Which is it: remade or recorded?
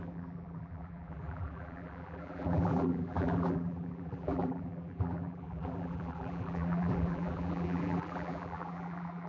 remade